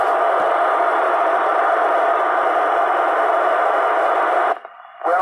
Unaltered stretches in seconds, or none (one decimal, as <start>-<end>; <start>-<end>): 0.0-0.9; 1.6-5.2